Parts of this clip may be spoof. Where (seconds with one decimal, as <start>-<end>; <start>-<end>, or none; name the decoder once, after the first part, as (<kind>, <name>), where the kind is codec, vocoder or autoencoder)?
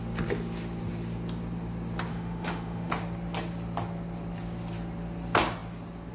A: 2.1-2.9 (autoencoder, DAC-VAE)